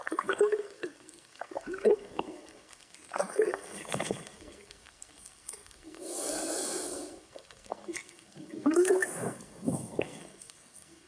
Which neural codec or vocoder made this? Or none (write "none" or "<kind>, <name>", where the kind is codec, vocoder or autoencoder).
codec, SNAC